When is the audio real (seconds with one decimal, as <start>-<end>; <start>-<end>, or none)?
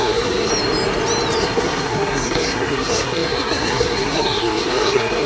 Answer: 0.5-1.4